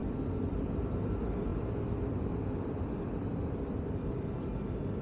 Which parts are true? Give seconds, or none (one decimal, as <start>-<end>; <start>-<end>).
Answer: 0.0-5.0